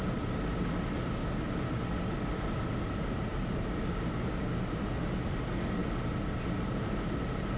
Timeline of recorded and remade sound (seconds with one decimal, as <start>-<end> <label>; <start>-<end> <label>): 0.0-1.2 recorded; 1.2-1.8 remade; 1.8-4.3 recorded; 4.3-4.8 remade; 4.8-7.6 recorded